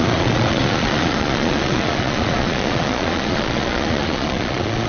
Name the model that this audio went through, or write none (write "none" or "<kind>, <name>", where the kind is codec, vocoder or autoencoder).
vocoder, Vocos